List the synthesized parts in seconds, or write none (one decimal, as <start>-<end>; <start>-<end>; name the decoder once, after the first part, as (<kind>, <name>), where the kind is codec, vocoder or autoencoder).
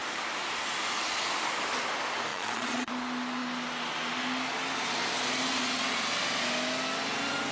2.3-2.9 (vocoder, Vocos)